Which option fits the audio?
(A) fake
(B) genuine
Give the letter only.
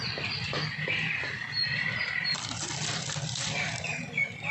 B